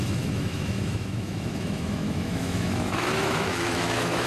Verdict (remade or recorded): remade